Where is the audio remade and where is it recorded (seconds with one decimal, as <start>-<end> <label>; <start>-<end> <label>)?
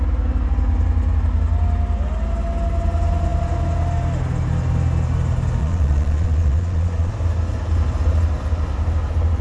0.0-5.6 recorded; 5.6-7.1 remade; 7.1-9.4 recorded